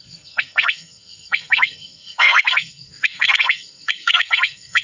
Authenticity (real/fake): fake